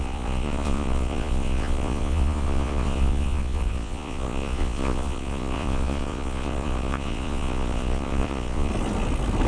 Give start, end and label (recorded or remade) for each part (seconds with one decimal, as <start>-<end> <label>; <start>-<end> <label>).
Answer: 0.0-8.7 remade; 8.7-9.5 recorded